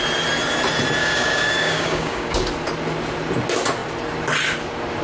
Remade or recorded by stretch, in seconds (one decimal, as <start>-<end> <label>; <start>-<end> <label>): 0.0-1.0 recorded; 1.0-2.4 remade; 2.4-5.0 recorded